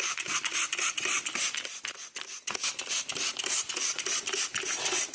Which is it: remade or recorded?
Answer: recorded